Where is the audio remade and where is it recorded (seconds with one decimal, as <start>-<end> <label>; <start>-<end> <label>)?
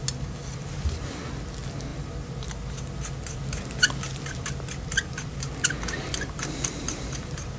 0.0-7.6 recorded